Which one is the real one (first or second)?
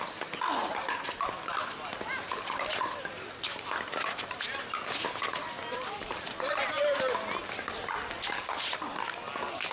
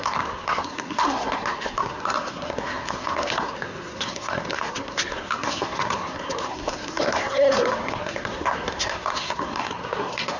first